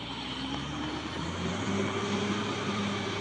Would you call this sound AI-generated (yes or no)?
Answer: yes